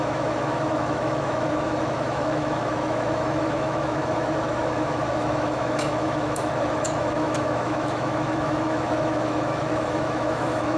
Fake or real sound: fake